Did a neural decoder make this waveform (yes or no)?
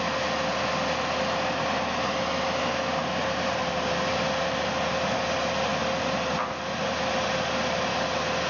no